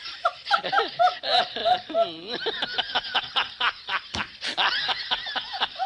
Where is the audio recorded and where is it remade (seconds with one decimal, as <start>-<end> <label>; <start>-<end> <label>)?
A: 0.0-5.9 recorded

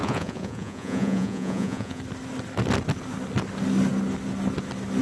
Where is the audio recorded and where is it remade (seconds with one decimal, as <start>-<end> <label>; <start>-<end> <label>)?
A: 0.0-2.0 remade; 2.0-5.0 recorded